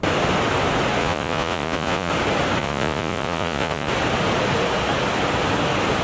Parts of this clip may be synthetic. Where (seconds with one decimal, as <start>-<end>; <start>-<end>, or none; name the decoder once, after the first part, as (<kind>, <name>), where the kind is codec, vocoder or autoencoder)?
1.0-2.1 (vocoder, Vocos); 2.6-3.9

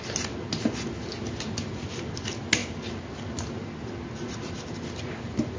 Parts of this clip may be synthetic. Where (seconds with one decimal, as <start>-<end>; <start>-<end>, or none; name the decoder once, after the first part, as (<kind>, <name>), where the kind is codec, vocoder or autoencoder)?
none

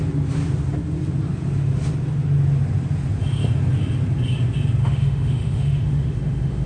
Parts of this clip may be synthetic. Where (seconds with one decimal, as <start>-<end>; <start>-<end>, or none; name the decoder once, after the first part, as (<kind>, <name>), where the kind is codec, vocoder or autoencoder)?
4.8-6.7 (autoencoder, DAC-VAE)

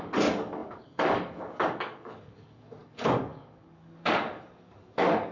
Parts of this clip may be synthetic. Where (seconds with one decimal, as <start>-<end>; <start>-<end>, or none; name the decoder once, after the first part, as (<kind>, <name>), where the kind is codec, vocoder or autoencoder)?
0.0-5.3 (codec, DAC)

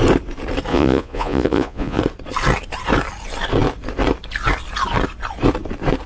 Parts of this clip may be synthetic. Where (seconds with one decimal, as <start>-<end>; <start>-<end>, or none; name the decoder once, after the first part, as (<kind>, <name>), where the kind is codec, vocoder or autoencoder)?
0.7-2.0 (vocoder, Vocos)

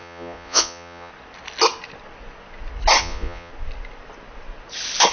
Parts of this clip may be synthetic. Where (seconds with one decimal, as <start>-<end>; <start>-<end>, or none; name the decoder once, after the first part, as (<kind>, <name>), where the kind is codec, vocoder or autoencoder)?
0.0-1.1 (vocoder, Vocos); 3.0-3.5

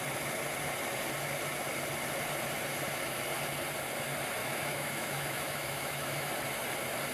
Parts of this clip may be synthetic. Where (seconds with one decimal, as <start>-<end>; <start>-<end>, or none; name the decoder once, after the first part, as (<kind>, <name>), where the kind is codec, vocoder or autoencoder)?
4.4-6.3 (autoencoder, DAC-VAE)

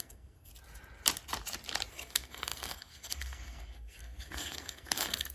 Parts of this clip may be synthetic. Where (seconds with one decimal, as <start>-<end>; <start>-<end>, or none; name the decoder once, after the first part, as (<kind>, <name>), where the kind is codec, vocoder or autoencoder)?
0.0-0.5 (codec, SNAC); 1.9-5.3